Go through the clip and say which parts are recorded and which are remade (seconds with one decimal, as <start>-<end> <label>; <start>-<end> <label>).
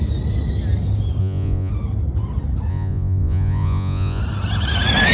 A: 0.0-1.2 recorded; 1.2-1.7 remade; 1.7-2.7 recorded; 2.7-4.2 remade; 4.2-5.1 recorded